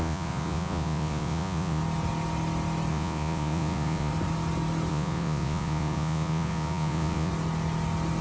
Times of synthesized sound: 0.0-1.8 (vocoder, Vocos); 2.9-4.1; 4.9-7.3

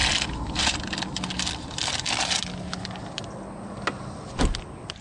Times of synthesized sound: none